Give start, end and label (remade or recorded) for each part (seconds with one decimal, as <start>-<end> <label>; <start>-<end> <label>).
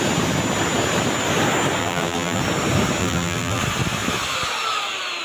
0.0-1.8 recorded; 1.8-2.4 remade; 2.4-3.0 recorded; 3.0-3.6 remade; 3.6-5.2 recorded